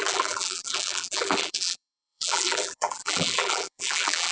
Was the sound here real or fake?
fake